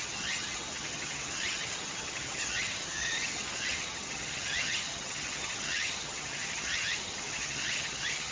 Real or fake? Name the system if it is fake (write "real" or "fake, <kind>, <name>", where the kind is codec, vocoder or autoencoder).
fake, vocoder, HiFi-GAN